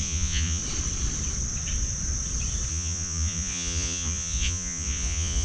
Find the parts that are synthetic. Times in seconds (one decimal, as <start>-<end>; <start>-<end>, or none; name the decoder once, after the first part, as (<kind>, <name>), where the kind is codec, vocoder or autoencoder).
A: 0.0-0.6 (vocoder, Vocos); 2.7-5.4